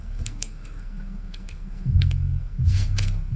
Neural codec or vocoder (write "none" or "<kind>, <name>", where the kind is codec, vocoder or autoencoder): codec, SNAC